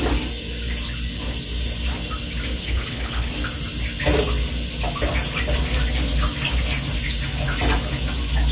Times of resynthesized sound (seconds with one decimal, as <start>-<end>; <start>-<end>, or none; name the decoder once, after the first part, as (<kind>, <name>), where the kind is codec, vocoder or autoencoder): 2.6-3.3 (codec, HILCodec)

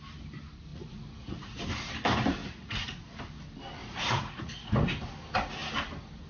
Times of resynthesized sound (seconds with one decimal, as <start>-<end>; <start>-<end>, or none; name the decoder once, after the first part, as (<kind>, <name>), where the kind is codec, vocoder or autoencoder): 0.7-1.6 (vocoder, Vocos); 2.4-3.2; 3.8-4.7

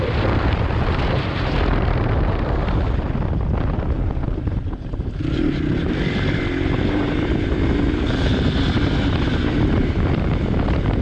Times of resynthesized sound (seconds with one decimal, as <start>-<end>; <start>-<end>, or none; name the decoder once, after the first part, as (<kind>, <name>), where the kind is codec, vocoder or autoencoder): 0.0-2.6 (vocoder, BigVGAN v2); 4.2-11.0

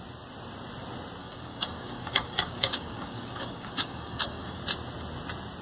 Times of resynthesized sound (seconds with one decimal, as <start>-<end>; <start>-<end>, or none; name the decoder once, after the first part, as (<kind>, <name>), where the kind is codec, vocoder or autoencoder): 1.2-4.6 (codec, DAC)

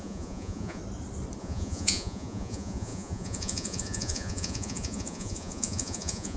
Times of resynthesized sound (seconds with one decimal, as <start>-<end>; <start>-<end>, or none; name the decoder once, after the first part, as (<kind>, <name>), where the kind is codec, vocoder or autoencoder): 0.0-0.8 (vocoder, Vocos); 1.4-6.4